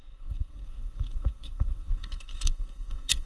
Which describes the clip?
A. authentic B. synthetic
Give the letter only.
B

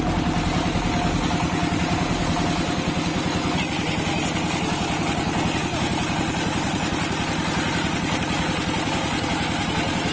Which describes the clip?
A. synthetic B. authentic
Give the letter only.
B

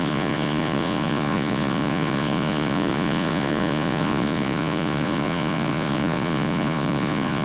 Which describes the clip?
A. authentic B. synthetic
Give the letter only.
B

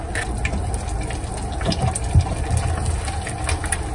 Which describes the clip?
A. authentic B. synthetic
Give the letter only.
A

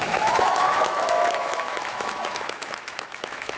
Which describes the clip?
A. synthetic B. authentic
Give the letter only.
A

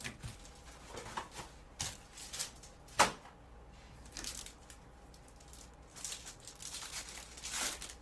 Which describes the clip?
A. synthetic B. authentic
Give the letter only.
B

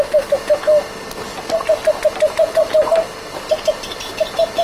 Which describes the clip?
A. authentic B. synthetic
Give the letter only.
A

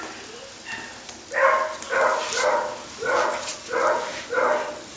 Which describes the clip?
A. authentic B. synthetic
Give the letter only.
A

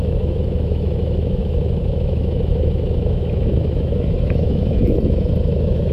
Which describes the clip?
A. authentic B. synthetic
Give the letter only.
B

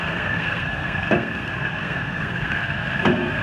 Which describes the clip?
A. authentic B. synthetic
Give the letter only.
B